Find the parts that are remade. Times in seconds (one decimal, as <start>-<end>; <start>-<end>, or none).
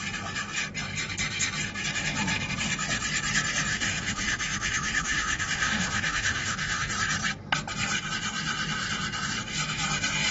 3.7-6.9